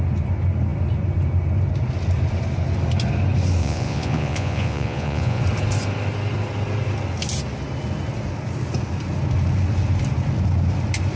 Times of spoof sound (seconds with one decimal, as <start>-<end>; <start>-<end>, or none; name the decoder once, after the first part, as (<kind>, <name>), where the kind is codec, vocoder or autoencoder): 3.6-5.4 (vocoder, Vocos)